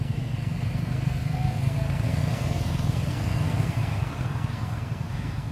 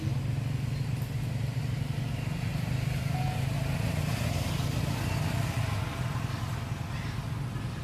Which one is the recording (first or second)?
second